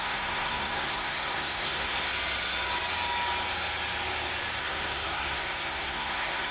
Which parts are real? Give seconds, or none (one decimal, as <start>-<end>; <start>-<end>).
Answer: 2.1-4.6